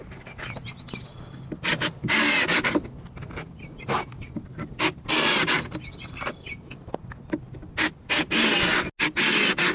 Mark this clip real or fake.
real